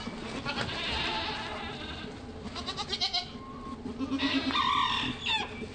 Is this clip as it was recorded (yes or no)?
yes